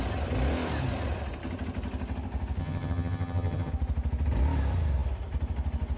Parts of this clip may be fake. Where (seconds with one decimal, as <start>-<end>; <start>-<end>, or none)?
2.6-3.7